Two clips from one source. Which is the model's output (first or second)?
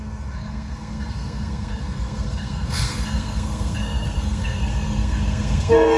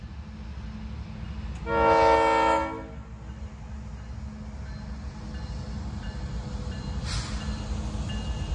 first